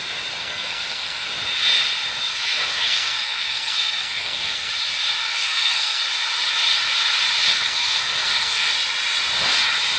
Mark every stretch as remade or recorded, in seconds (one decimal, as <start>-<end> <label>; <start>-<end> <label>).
0.0-0.4 recorded; 0.4-1.3 remade; 1.3-2.3 recorded; 2.3-4.7 remade; 4.7-5.2 recorded; 5.2-6.0 remade; 6.0-7.5 recorded; 7.5-8.7 remade; 8.7-10.0 recorded